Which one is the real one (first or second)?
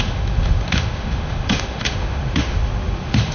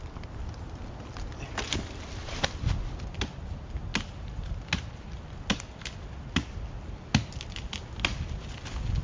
second